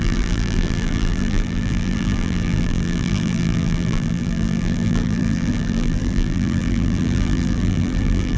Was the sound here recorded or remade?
remade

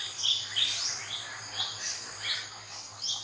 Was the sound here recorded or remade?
recorded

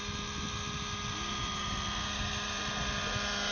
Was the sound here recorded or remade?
recorded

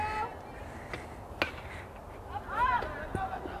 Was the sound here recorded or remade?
recorded